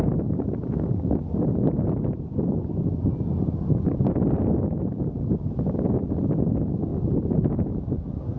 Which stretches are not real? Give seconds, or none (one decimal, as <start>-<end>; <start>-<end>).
none